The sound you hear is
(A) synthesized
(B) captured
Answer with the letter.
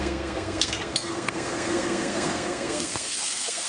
A